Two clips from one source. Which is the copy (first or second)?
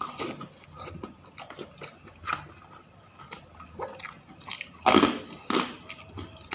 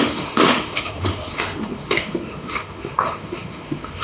second